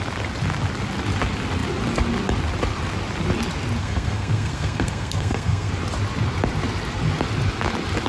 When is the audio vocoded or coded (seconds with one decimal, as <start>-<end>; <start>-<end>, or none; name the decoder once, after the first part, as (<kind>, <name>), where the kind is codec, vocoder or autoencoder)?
3.8-5.7 (codec, SNAC)

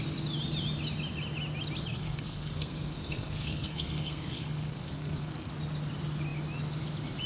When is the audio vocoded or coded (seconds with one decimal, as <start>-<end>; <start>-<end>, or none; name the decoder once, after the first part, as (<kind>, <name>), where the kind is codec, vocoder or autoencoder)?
1.9-5.5 (codec, SNAC)

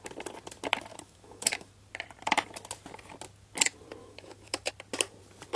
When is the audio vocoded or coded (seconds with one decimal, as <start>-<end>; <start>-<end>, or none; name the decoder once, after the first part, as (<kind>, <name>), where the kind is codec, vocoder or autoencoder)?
0.9-1.7 (autoencoder, DAC-VAE); 4.0-4.7

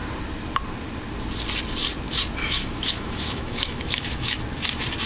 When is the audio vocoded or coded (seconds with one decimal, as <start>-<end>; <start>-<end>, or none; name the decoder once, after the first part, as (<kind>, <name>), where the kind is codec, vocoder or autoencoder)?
2.4-4.4 (autoencoder, DAC-VAE)

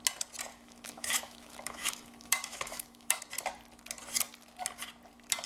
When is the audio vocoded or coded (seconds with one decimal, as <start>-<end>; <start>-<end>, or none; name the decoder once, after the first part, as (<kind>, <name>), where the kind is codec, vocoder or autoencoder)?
0.5-3.2 (autoencoder, DAC-VAE)

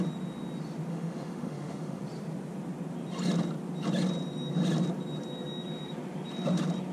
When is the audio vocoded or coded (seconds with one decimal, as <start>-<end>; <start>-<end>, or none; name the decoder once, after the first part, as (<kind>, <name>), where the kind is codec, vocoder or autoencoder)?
0.9-2.0 (autoencoder, DAC-VAE)

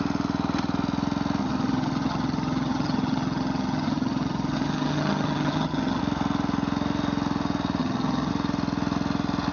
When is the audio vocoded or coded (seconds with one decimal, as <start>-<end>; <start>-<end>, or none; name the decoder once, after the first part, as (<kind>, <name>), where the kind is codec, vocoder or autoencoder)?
1.4-6.0 (vocoder, HiFi-GAN); 7.8-8.3

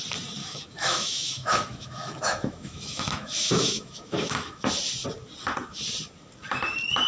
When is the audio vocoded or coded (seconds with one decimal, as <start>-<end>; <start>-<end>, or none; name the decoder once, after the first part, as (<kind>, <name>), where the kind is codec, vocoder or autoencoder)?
0.4-4.7 (autoencoder, DAC-VAE)